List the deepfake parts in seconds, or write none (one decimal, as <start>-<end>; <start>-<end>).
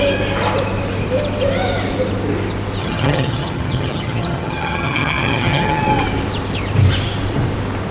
2.8-5.8